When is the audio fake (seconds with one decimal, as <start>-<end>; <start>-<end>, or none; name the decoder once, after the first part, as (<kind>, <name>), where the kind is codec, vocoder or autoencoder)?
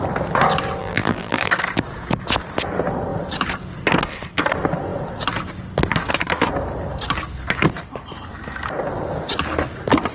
0.8-1.5 (vocoder, BigVGAN v2)